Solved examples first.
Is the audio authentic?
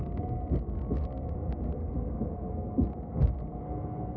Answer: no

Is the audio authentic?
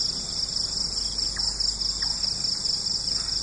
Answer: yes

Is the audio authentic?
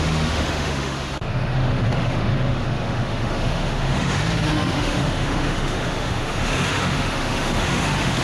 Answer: no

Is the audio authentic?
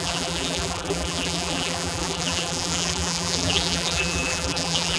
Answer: no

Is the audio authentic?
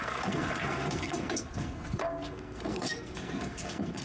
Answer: no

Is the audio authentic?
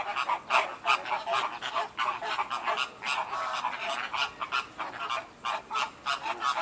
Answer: yes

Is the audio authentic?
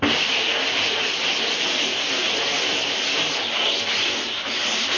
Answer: yes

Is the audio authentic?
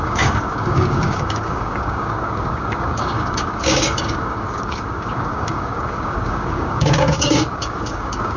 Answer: no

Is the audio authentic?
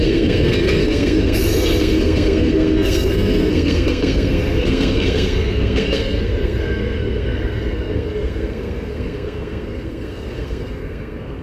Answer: no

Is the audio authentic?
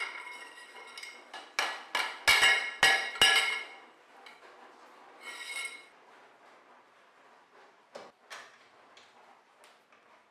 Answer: yes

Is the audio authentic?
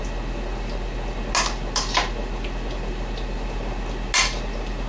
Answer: yes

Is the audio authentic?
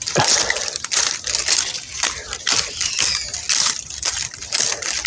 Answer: yes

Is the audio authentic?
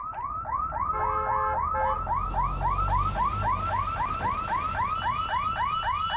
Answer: yes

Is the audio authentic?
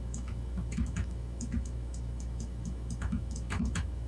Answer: no